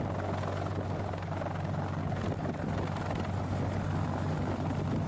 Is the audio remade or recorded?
recorded